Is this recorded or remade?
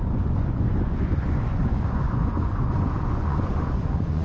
remade